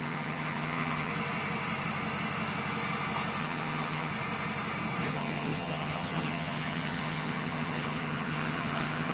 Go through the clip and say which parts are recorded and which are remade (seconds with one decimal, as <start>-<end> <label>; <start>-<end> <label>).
0.0-1.1 remade; 1.1-3.4 recorded; 3.4-4.1 remade; 4.1-5.1 recorded; 5.1-9.1 remade